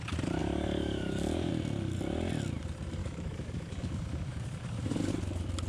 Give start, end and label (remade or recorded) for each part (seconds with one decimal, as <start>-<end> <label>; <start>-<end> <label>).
0.0-0.4 recorded; 0.4-1.5 remade; 1.5-3.0 recorded; 3.0-5.1 remade; 5.1-5.7 recorded